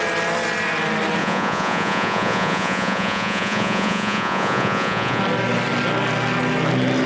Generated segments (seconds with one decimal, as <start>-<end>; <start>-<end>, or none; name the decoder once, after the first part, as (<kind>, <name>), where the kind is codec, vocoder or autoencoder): 1.2-5.2 (vocoder, Vocos)